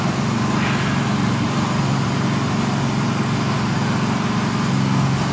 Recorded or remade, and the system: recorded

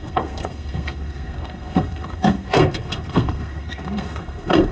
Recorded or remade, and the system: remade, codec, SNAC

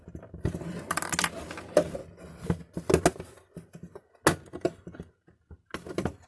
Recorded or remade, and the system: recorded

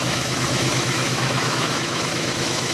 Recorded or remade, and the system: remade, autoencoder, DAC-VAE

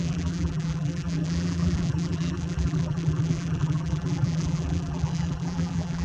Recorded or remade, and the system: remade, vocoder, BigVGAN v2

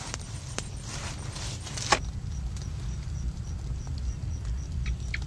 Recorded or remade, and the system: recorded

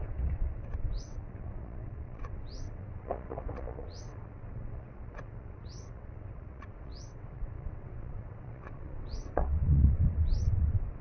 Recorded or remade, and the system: remade, vocoder, WaveNeXt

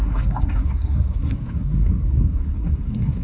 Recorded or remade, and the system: remade, codec, SNAC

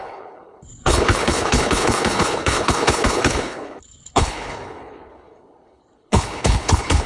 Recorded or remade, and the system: remade, codec, HILCodec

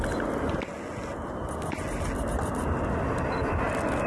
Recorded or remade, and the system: recorded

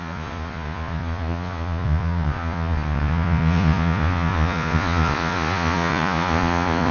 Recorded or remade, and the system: remade, vocoder, Vocos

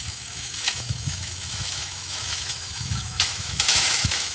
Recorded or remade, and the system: remade, autoencoder, DAC-VAE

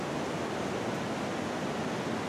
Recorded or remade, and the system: recorded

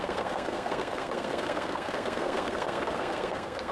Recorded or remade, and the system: remade, codec, SNAC